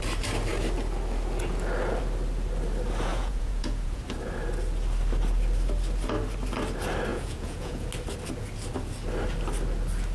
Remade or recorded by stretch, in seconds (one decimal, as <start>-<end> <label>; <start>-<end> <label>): 0.0-3.1 recorded; 3.1-4.0 remade; 4.0-7.1 recorded; 7.1-7.9 remade; 7.9-10.1 recorded